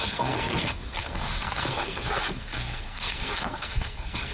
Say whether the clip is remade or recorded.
remade